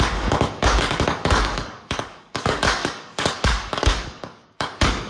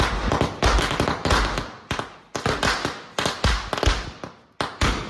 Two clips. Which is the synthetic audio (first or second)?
first